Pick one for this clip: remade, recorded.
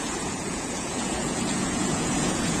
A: remade